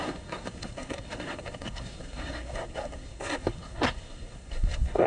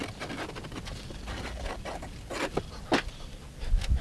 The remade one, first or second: first